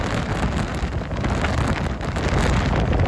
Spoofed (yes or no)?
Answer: no